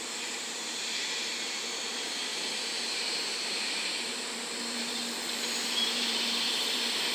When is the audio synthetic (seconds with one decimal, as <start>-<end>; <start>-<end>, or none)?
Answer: 0.0-2.3; 2.9-5.0; 5.8-7.1